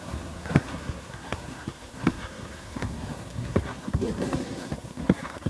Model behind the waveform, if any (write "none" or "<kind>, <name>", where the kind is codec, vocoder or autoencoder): codec, SNAC